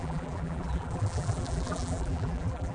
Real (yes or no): no